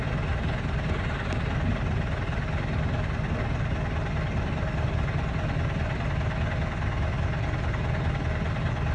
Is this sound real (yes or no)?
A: yes